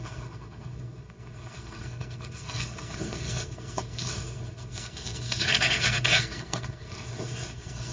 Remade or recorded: remade